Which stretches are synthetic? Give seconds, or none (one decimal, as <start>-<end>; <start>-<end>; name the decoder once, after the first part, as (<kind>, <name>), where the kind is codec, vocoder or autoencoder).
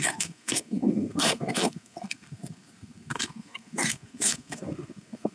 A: 0.0-5.3 (codec, SNAC)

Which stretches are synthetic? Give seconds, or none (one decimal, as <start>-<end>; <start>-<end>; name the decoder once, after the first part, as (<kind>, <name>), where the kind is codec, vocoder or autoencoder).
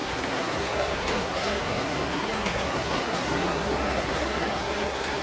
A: 0.0-5.2 (codec, SNAC)